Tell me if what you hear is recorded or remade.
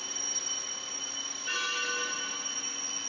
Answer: recorded